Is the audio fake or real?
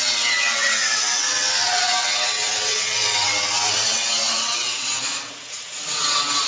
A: fake